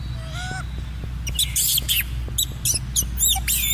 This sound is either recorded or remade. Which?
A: recorded